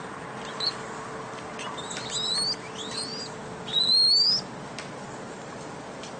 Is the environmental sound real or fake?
real